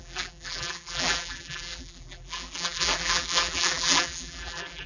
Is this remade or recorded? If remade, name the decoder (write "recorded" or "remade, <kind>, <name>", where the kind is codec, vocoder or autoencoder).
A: remade, vocoder, BigVGAN v2